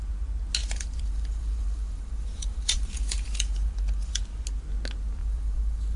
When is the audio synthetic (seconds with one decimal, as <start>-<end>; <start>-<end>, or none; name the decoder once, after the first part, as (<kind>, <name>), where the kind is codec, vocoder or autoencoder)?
0.6-4.2 (vocoder, BigVGAN v2); 5.2-6.0